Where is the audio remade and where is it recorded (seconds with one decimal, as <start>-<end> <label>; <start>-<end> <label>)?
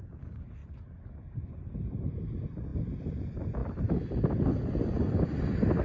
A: 0.0-3.6 recorded; 3.6-4.5 remade; 4.5-5.8 recorded